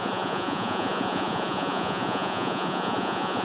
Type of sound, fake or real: fake